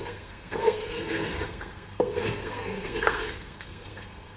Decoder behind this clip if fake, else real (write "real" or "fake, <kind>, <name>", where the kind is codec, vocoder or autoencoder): fake, codec, SNAC